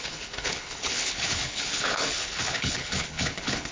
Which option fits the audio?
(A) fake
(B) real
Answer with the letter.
A